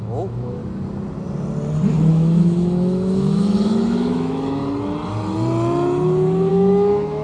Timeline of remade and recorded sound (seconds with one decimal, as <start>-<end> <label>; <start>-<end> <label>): 0.0-0.6 remade; 0.6-2.1 recorded; 2.1-4.6 remade; 4.6-6.5 recorded; 6.5-7.2 remade